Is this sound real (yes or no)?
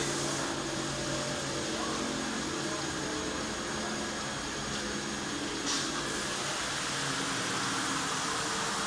yes